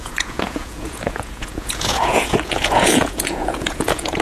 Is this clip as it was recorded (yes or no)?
no